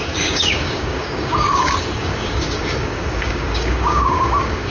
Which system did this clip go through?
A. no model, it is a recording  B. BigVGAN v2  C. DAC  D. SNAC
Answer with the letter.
C